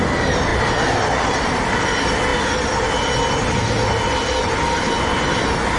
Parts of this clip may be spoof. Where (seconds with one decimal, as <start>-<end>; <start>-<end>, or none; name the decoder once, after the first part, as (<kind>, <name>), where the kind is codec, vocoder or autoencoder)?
none